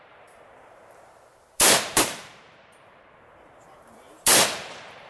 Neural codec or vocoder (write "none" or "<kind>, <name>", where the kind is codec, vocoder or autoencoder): vocoder, BigVGAN v2